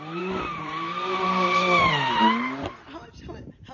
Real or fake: fake